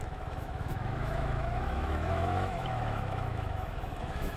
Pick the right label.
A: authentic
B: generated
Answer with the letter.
B